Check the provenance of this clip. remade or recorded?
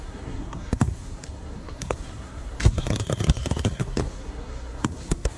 remade